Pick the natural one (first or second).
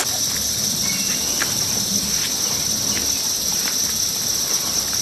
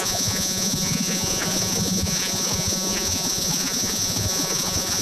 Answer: first